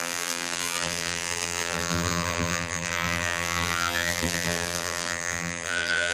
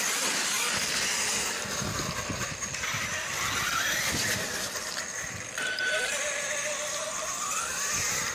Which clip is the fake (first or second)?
first